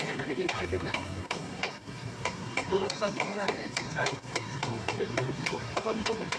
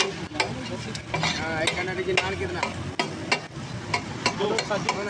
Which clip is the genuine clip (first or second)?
second